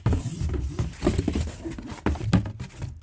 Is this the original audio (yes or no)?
yes